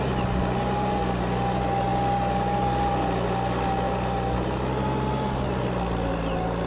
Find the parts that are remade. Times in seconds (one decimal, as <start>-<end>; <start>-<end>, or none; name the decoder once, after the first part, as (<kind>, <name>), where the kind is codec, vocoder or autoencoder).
none